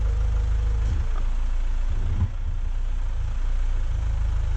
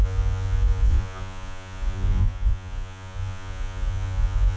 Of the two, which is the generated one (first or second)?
second